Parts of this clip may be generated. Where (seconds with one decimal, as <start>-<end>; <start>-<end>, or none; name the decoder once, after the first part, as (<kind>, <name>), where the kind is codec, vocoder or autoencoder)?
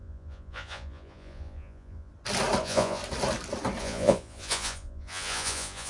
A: 0.0-2.1 (vocoder, Vocos); 2.6-3.0; 3.8-5.9